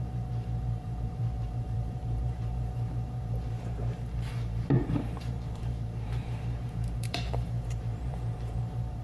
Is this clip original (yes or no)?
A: no